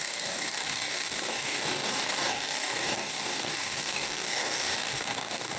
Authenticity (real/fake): fake